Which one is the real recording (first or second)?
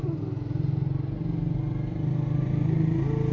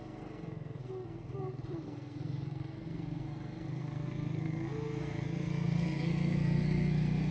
first